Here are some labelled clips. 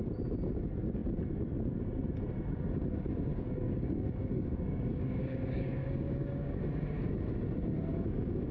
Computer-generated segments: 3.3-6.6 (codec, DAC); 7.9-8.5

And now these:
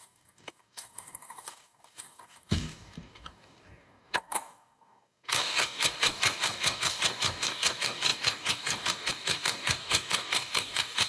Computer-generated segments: 0.0-11.1 (codec, DAC)

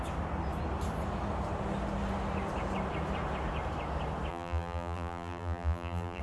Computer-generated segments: 4.3-6.2 (vocoder, BigVGAN v2)

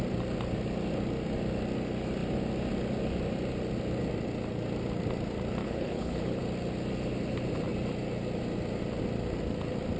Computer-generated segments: 5.6-6.4 (codec, HILCodec)

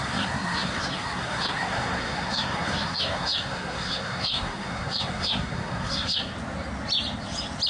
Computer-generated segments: 0.0-6.3 (codec, SNAC)

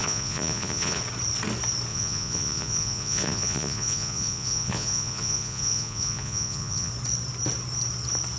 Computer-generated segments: 0.0-1.0 (vocoder, Vocos); 1.9-6.9

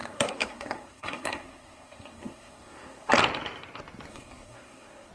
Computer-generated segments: 0.0-3.1 (codec, SNAC); 4.1-5.1